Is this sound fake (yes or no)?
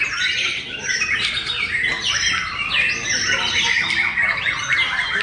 yes